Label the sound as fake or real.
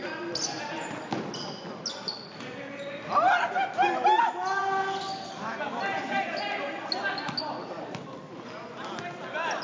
real